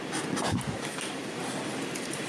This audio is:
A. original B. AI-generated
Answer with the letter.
B